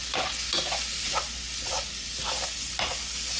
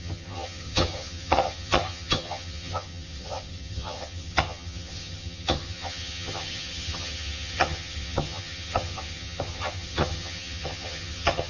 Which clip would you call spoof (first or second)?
second